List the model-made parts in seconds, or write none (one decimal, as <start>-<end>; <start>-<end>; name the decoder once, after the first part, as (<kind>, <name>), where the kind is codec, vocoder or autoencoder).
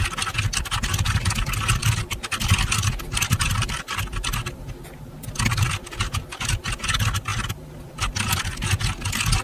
none